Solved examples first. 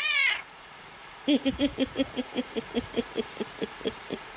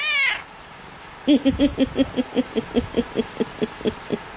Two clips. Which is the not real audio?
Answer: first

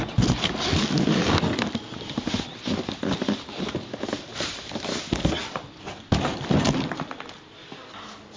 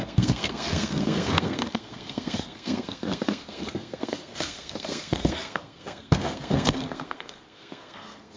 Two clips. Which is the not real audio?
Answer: second